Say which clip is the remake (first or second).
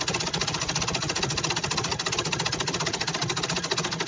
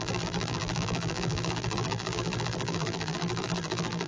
second